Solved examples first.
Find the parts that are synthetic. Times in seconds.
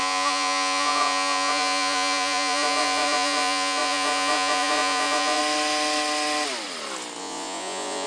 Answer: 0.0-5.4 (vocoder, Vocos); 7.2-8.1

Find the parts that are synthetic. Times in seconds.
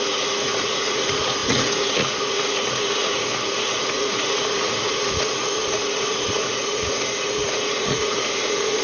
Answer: 0.0-8.8 (vocoder, Vocos)